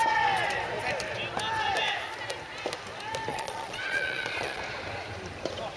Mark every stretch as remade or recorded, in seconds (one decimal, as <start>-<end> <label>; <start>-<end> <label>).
0.0-3.3 recorded; 3.3-4.6 remade; 4.6-5.8 recorded